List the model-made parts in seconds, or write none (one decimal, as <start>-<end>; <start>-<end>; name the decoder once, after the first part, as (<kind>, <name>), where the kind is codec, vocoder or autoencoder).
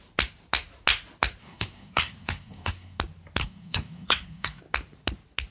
1.4-3.0 (codec, SNAC); 3.4-4.6